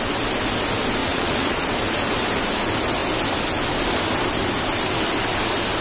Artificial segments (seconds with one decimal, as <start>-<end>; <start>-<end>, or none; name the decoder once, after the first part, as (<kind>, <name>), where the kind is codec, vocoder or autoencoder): 1.0-1.7 (vocoder, Vocos)